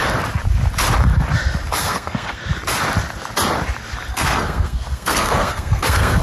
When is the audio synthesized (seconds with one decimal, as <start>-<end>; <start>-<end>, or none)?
1.8-2.4; 4.1-6.2

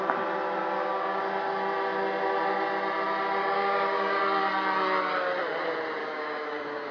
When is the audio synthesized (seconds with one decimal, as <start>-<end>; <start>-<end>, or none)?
0.6-1.2; 3.4-4.2; 6.0-6.9